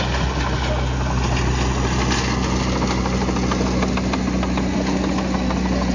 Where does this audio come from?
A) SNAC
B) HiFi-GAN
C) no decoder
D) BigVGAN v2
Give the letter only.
C